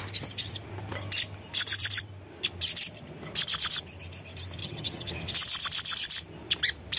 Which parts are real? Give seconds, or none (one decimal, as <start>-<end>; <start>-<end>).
0.0-4.6; 5.1-7.0